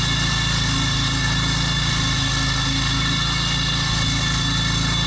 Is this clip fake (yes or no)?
no